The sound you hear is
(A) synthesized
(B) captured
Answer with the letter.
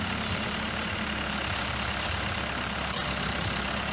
A